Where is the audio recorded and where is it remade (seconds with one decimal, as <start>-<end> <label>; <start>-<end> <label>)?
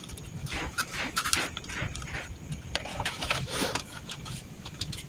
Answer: 0.0-0.4 recorded; 0.4-1.3 remade; 1.3-2.9 recorded; 2.9-5.1 remade